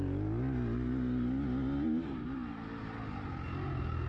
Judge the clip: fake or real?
real